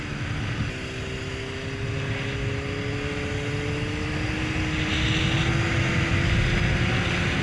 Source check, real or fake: real